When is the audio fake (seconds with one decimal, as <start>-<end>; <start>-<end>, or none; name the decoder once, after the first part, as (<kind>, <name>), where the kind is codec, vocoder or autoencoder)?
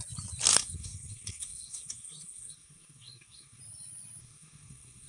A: 0.5-3.6 (codec, SNAC); 4.2-5.1